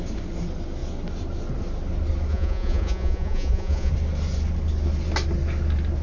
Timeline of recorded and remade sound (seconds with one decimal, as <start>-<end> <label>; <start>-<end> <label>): 0.0-2.3 recorded; 2.3-3.9 remade; 3.9-6.0 recorded